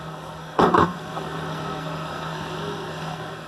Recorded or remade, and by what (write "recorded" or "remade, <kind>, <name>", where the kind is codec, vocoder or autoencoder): remade, codec, SNAC